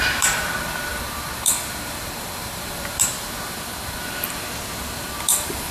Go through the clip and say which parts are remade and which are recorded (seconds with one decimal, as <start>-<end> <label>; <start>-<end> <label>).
0.0-5.7 remade